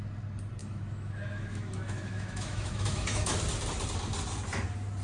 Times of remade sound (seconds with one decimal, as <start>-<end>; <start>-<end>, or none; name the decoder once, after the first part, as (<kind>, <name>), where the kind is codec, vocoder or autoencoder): 0.6-3.3 (autoencoder, DAC-VAE)